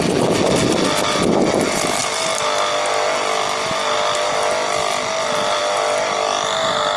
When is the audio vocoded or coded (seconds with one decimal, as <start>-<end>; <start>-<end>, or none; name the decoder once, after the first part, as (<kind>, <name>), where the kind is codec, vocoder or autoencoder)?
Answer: none

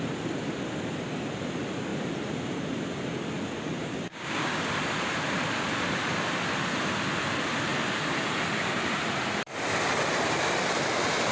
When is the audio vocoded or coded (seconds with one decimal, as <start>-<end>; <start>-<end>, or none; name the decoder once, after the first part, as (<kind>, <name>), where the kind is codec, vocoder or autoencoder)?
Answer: 3.8-4.7 (codec, DAC)

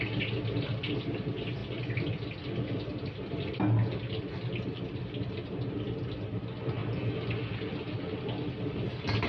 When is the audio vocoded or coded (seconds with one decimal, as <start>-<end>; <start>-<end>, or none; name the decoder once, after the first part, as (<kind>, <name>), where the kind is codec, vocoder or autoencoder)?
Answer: none

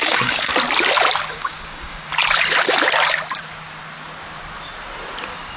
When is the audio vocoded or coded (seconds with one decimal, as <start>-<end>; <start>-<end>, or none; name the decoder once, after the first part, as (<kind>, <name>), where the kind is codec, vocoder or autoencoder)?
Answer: 0.0-0.5 (codec, DAC); 1.3-2.1